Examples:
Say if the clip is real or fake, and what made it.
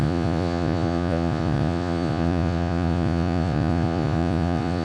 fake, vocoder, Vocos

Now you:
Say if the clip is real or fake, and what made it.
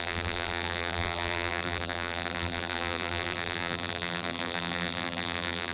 fake, vocoder, BigVGAN v2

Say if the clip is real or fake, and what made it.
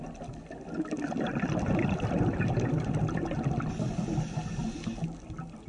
real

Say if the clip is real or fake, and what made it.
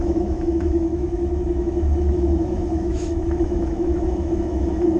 fake, autoencoder, DAC-VAE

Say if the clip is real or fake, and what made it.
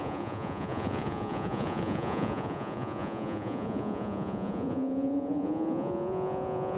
fake, vocoder, Vocos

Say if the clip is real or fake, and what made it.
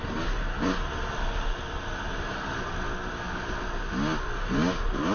real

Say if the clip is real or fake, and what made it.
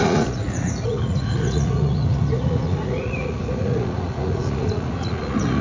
fake, vocoder, Vocos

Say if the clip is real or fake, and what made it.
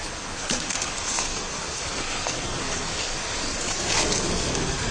fake, codec, SNAC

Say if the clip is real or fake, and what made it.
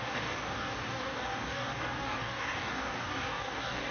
fake, codec, DAC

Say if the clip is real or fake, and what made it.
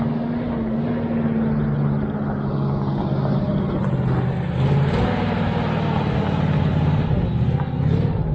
real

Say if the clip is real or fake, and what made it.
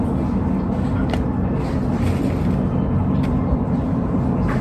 real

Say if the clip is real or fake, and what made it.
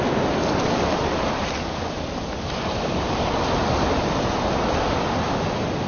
real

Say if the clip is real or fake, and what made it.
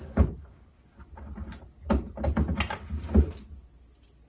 real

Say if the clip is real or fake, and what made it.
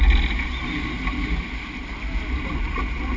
real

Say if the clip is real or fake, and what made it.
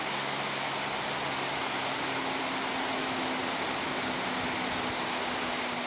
real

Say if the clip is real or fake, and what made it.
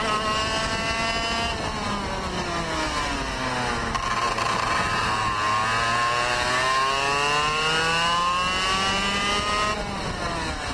real